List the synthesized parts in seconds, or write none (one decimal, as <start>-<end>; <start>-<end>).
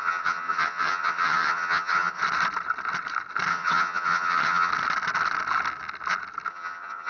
0.0-2.2; 3.5-4.7; 6.5-7.1